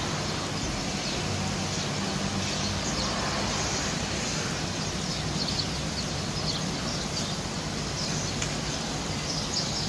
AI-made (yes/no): no